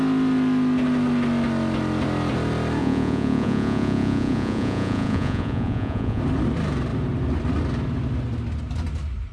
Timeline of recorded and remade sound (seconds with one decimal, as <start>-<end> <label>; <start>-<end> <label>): 0.0-2.8 recorded; 2.8-6.2 remade; 6.2-9.3 recorded